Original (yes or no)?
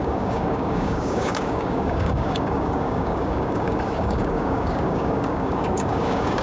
no